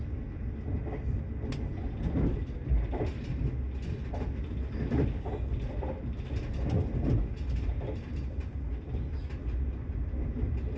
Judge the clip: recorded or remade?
recorded